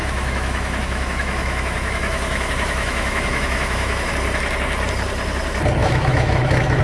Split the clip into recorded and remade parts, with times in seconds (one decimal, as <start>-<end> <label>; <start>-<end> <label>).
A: 0.0-4.1 remade; 4.1-5.8 recorded; 5.8-6.8 remade